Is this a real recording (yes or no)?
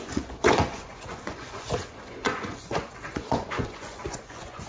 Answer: no